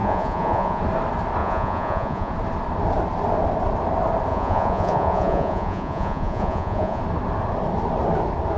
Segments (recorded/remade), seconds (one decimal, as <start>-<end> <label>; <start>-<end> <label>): 0.0-0.8 remade; 0.8-1.4 recorded; 1.4-2.3 remade; 2.3-4.3 recorded; 4.3-7.0 remade; 7.0-8.6 recorded

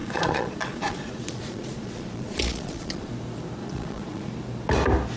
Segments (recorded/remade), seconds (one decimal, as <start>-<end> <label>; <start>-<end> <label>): 0.0-3.1 remade; 3.1-3.6 recorded; 3.6-4.3 remade; 4.3-5.2 recorded

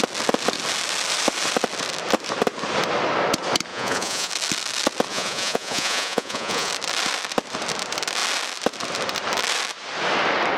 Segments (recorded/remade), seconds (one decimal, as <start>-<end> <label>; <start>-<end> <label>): 0.0-3.7 recorded; 3.7-4.3 remade; 4.3-5.1 recorded; 5.1-6.7 remade; 6.7-10.6 recorded

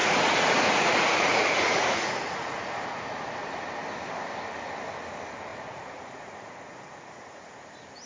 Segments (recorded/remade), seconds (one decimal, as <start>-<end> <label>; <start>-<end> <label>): 0.0-3.0 remade; 3.0-5.5 recorded; 5.5-7.6 remade; 7.6-8.1 recorded

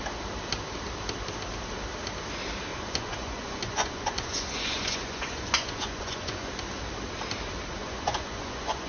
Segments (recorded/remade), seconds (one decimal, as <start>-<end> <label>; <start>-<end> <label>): 0.0-2.7 recorded; 2.7-6.5 remade; 6.5-7.8 recorded; 7.8-8.9 remade

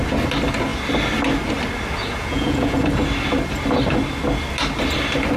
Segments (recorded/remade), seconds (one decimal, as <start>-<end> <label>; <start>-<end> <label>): 0.0-2.0 recorded; 2.0-2.9 remade; 2.9-5.4 recorded

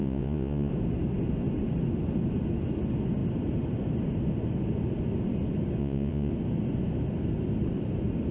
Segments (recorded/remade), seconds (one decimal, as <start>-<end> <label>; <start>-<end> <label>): 0.0-0.7 remade; 0.7-5.8 recorded; 5.8-6.3 remade; 6.3-8.3 recorded

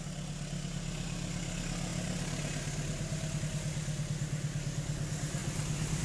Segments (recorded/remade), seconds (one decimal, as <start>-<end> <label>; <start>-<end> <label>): 0.0-6.0 recorded